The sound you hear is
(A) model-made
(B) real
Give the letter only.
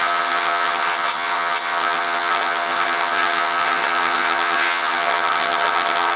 A